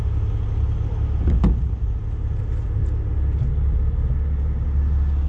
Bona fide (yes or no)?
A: yes